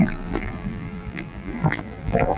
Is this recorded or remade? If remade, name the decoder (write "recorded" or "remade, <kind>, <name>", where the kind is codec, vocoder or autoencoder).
remade, vocoder, BigVGAN v2